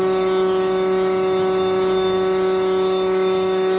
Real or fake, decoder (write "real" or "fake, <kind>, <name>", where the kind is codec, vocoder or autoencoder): fake, autoencoder, DAC-VAE